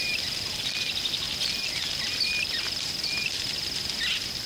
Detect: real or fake real